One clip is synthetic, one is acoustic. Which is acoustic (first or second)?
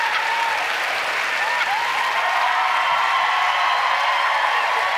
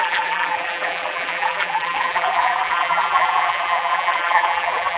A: first